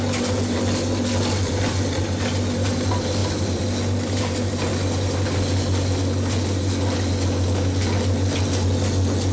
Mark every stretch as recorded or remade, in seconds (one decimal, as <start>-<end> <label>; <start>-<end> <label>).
0.0-9.3 recorded